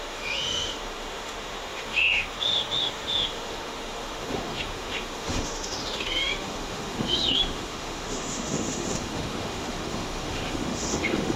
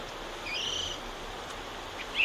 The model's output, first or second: first